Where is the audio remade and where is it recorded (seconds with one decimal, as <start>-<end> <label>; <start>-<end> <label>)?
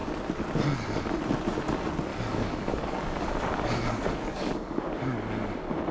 0.0-2.1 recorded; 2.1-5.9 remade